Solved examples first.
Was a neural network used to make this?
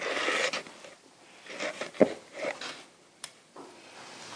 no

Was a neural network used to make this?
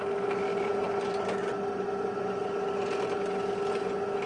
no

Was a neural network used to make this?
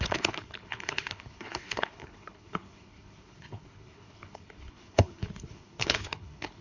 yes